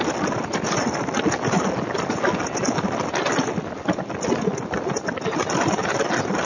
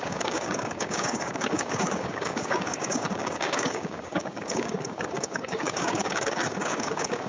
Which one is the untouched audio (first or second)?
first